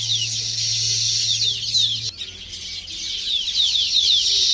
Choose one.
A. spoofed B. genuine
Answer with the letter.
B